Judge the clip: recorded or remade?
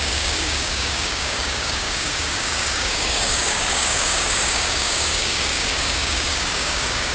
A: remade